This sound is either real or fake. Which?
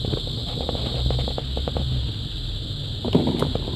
real